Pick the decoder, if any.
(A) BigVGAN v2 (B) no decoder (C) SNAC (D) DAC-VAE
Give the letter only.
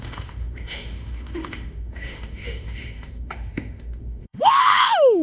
D